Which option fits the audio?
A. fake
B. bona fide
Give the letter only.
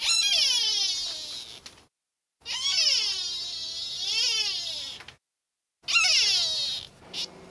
B